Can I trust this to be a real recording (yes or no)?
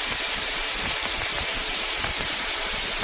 no